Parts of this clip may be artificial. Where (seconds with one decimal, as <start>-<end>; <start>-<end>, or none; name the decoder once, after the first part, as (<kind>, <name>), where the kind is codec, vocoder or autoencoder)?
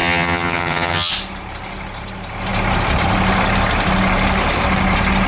0.0-1.1 (vocoder, HiFi-GAN)